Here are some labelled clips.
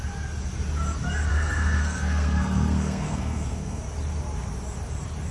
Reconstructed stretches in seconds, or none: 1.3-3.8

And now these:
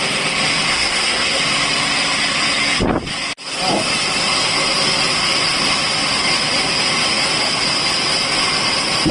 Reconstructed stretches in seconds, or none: 0.7-1.4

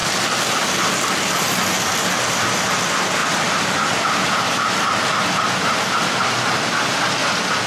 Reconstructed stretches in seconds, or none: none

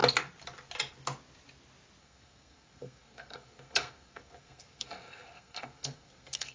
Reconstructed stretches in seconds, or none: 2.0-6.5

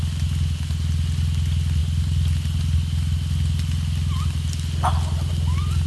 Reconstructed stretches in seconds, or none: none

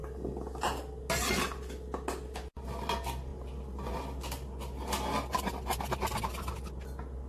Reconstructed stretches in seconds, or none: none